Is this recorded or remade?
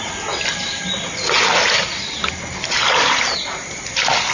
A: recorded